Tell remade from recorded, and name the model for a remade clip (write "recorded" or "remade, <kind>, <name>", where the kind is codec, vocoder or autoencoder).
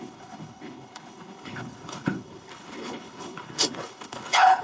remade, codec, HILCodec